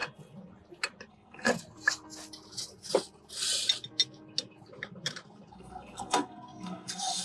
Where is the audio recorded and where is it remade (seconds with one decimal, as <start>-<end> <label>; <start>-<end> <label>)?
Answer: 0.0-1.1 recorded; 1.1-1.5 remade; 1.5-5.5 recorded; 5.5-7.2 remade